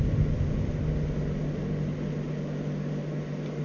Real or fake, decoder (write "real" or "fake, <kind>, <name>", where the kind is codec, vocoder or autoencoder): real